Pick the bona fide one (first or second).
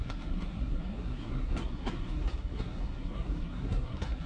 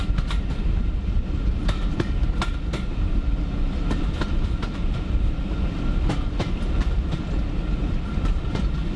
second